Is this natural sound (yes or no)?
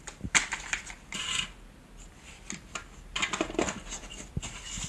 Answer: yes